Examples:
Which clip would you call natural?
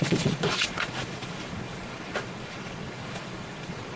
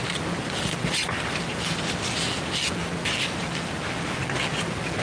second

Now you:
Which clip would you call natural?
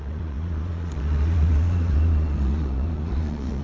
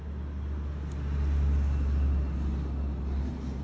second